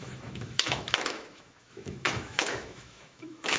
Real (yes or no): no